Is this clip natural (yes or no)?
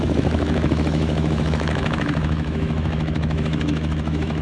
no